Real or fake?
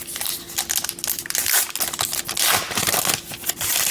real